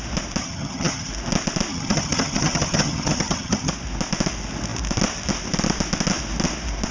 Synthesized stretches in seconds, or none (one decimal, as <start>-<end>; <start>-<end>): 0.4-1.1; 1.7-3.7